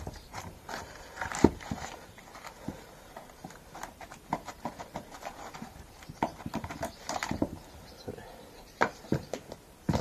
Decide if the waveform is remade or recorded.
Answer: remade